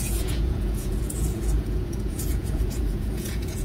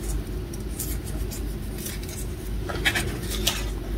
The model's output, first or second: first